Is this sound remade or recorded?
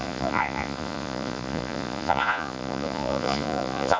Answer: remade